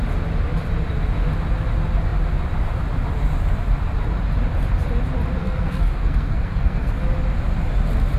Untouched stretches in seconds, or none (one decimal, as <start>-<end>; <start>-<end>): 0.0-5.4; 7.0-8.2